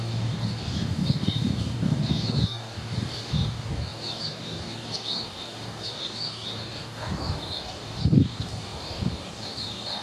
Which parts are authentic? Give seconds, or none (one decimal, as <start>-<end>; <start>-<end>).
none